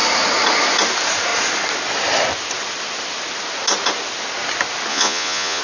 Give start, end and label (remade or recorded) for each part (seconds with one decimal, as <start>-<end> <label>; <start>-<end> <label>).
0.0-4.9 recorded; 4.9-5.6 remade